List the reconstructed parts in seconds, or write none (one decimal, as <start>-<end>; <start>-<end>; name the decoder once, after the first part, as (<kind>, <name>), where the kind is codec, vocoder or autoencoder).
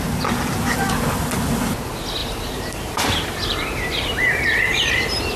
2.2-5.4 (vocoder, BigVGAN v2)